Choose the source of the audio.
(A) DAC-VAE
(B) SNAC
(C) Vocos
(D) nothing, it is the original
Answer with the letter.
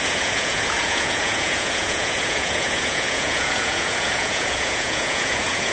C